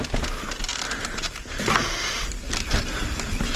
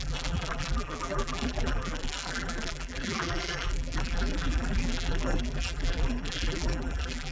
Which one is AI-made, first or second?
second